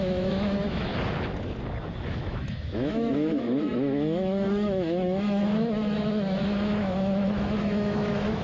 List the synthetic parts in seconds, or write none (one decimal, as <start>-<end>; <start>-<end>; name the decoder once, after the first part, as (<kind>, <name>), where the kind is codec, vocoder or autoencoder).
0.0-0.9 (autoencoder, DAC-VAE); 2.1-8.4